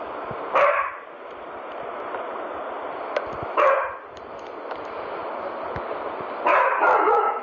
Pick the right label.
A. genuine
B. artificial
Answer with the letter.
A